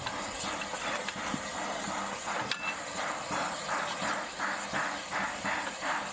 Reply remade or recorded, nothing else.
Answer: recorded